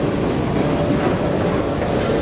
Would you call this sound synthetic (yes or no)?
no